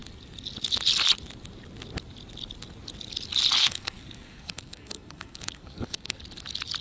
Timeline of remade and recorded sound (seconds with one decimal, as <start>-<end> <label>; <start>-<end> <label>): 0.0-3.6 recorded; 3.6-6.2 remade; 6.2-6.8 recorded